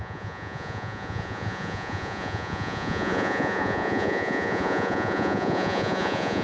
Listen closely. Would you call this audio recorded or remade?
remade